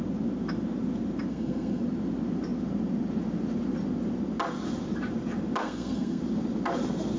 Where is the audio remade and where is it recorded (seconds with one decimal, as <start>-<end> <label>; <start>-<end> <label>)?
0.0-1.3 recorded; 1.3-1.8 remade; 1.8-5.6 recorded; 5.6-6.2 remade; 6.2-7.2 recorded